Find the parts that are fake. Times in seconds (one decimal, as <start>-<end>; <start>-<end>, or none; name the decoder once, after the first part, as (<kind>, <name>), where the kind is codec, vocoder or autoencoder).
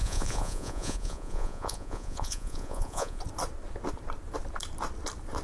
0.0-3.2 (vocoder, Vocos)